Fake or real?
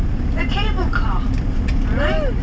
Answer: real